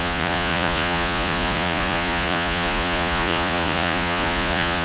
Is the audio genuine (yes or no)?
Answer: no